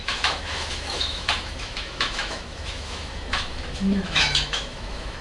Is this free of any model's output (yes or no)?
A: no